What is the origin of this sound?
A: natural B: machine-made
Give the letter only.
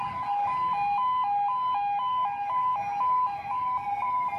A